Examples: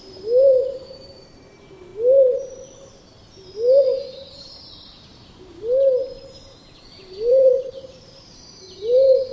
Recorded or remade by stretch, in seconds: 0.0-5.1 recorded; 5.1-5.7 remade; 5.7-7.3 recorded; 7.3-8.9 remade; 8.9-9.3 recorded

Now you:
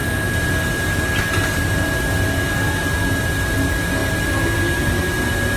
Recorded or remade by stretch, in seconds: 0.0-5.6 recorded

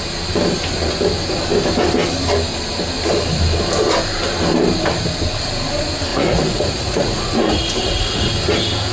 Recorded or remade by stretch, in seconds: 0.0-6.1 recorded; 6.1-8.3 remade; 8.3-8.9 recorded

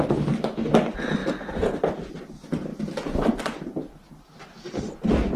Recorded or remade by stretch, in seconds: 0.0-5.4 recorded

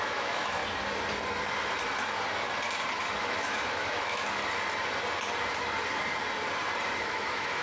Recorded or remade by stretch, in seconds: 0.0-0.6 remade; 0.6-3.2 recorded; 3.2-4.4 remade; 4.4-7.0 recorded; 7.0-7.6 remade

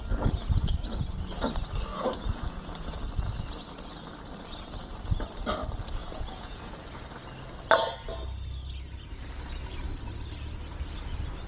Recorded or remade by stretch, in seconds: 0.0-1.9 recorded; 1.9-3.0 remade; 3.0-6.0 recorded; 6.0-6.6 remade; 6.6-11.5 recorded

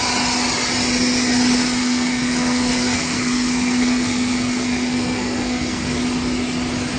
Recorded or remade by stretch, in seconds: 0.0-1.8 recorded; 1.8-6.0 remade; 6.0-7.0 recorded

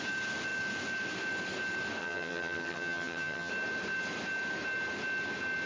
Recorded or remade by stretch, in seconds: 0.0-2.0 recorded; 2.0-3.5 remade; 3.5-5.7 recorded